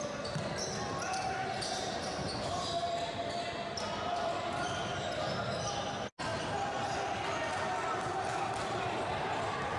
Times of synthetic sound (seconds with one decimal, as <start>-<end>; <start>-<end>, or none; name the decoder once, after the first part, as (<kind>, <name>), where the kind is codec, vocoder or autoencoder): none